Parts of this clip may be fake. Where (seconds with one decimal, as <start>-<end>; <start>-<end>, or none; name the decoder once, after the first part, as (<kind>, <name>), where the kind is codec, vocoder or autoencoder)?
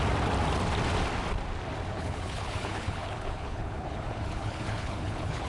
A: 1.9-5.5 (codec, HILCodec)